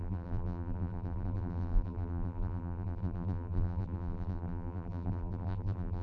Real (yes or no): no